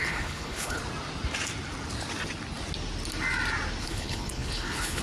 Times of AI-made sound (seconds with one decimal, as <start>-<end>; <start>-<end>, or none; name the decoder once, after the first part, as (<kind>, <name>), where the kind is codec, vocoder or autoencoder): 0.0-0.8 (codec, HILCodec); 3.8-5.0